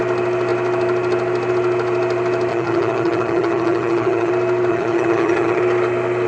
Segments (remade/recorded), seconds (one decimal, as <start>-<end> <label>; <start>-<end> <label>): 0.0-2.5 recorded; 2.5-4.3 remade; 4.3-4.7 recorded; 4.7-5.6 remade; 5.6-6.3 recorded